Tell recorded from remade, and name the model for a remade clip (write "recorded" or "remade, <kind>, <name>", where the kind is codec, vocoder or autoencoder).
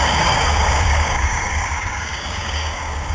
remade, codec, DAC